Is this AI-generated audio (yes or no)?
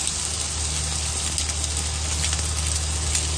no